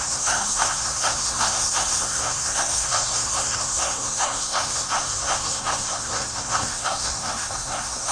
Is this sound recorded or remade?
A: remade